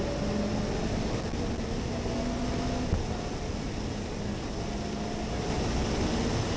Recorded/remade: recorded